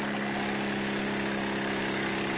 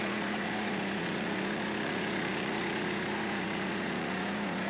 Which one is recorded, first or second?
first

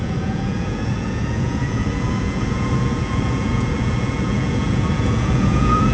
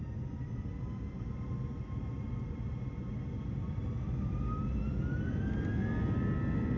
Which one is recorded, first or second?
second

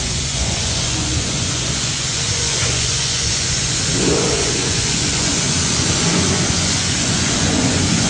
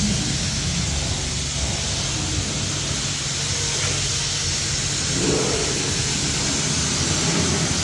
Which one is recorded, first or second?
second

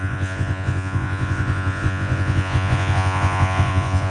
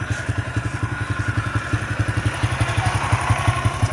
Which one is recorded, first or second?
second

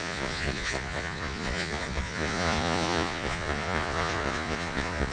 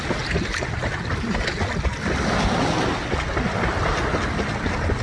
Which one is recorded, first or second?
second